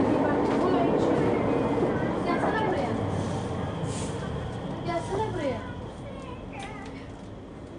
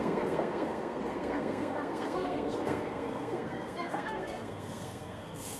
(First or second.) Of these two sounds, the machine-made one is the second